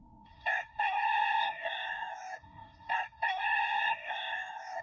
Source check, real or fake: fake